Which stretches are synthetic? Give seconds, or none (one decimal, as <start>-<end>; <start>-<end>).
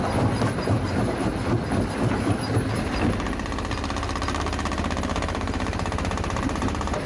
0.0-1.3; 4.4-7.1